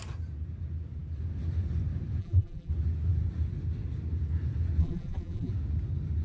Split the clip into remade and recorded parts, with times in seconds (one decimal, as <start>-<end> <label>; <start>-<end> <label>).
0.0-2.2 recorded; 2.2-2.7 remade; 2.7-4.8 recorded; 4.8-5.5 remade; 5.5-6.2 recorded